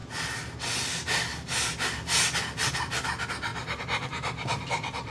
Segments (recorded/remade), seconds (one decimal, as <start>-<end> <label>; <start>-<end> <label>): 0.0-5.1 recorded

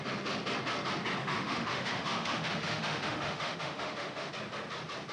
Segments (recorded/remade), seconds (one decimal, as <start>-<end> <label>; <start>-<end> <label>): 0.0-1.2 recorded; 1.2-4.3 remade; 4.3-5.1 recorded

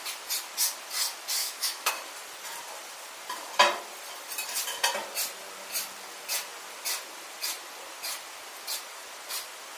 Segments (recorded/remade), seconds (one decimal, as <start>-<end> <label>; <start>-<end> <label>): 0.0-1.4 recorded; 1.4-1.9 remade; 1.9-9.8 recorded